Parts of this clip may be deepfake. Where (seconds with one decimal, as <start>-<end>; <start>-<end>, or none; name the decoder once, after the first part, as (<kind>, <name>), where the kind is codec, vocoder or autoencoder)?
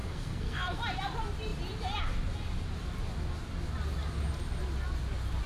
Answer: 0.0-0.8 (codec, SNAC)